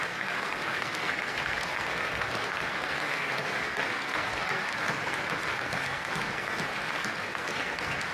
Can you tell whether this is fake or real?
fake